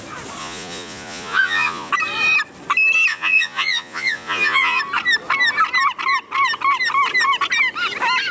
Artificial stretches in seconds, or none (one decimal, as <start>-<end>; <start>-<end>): 0.4-1.9; 3.1-4.8